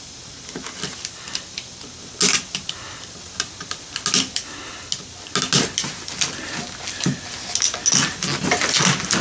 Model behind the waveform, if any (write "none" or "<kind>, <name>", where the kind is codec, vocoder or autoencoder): none